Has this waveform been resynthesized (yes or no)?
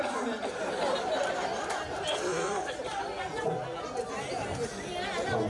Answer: no